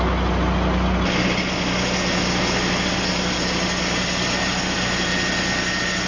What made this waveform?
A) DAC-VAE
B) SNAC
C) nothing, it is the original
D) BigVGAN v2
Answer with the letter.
C